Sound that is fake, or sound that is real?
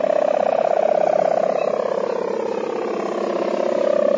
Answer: real